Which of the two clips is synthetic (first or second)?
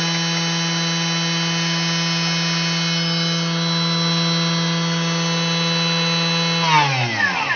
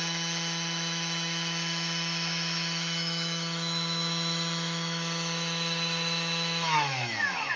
second